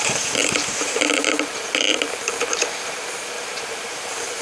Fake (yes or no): yes